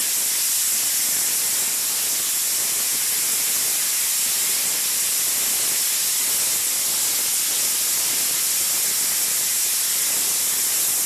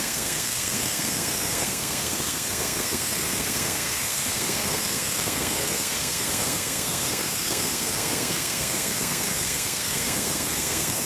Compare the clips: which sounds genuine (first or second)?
first